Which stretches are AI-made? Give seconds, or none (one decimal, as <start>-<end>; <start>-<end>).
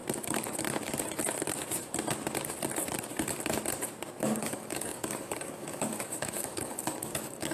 4.2-7.5